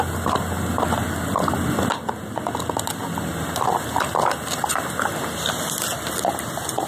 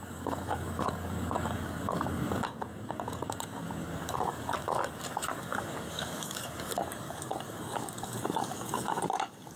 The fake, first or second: second